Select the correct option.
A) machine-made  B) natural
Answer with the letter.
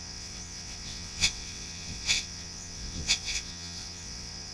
A